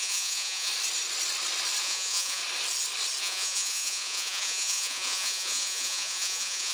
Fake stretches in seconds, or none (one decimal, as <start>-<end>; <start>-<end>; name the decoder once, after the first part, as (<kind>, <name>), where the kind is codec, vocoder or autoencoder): 0.0-0.7 (vocoder, Vocos); 1.8-2.4; 3.2-6.7